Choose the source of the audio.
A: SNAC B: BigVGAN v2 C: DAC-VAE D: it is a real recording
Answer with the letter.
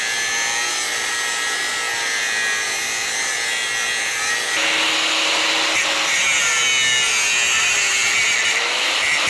D